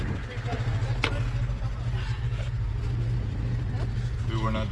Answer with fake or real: real